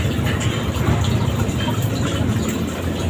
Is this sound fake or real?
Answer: real